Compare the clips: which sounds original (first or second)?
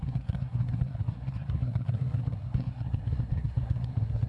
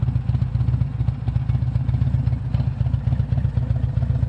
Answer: second